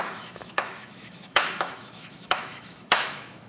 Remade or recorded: remade